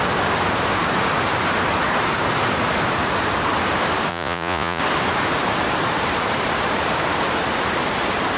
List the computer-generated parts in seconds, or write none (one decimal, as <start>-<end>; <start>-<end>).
4.1-4.8